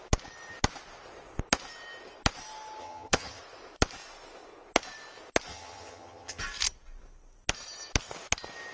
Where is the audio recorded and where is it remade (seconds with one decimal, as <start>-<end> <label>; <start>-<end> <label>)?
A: 0.0-2.8 recorded; 2.8-3.4 remade; 3.4-5.5 recorded; 5.5-6.4 remade; 6.4-8.7 recorded